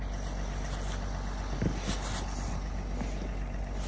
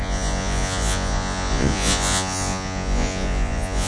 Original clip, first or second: first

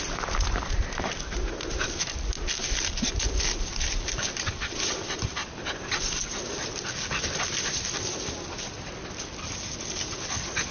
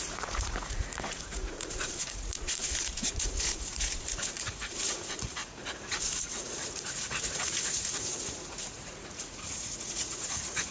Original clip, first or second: first